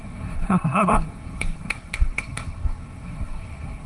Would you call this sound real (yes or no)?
no